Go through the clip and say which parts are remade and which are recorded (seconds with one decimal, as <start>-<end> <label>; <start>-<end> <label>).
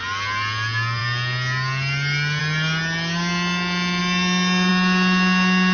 0.0-5.7 recorded